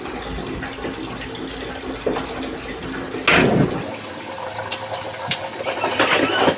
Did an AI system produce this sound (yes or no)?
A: no